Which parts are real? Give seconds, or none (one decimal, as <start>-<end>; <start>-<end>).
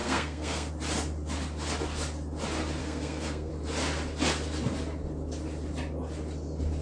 0.7-2.8; 3.5-6.8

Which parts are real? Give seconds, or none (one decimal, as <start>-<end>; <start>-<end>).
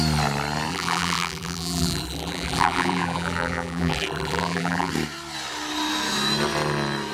0.0-0.7; 4.9-7.1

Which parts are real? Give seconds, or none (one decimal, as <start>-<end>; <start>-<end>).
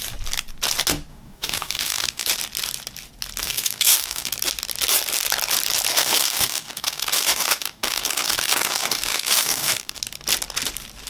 0.0-1.1; 2.3-3.4; 4.3-5.9; 10.0-11.1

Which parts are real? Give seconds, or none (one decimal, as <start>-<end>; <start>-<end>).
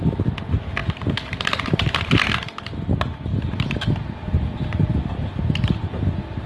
0.0-0.8; 2.0-3.3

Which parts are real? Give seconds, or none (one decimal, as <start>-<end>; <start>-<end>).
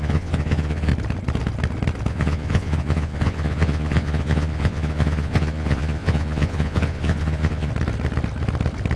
0.9-2.1; 7.7-9.0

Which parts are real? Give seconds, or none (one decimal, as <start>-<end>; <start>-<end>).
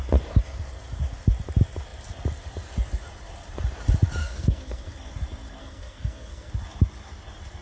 0.0-4.2; 4.9-5.6; 6.5-7.6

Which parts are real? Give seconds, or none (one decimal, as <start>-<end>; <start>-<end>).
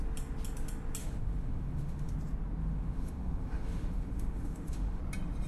0.0-1.0; 2.1-2.6; 5.0-5.5